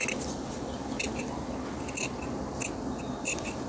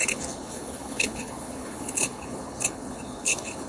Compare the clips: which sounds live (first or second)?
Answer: first